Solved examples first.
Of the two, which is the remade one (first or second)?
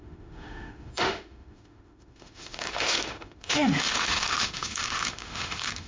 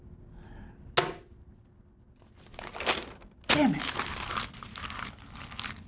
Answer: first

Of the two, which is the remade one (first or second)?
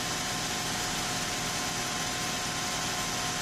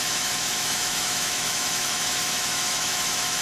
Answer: second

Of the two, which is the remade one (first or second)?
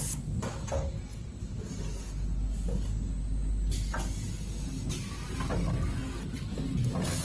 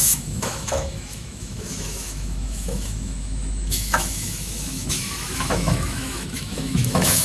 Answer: second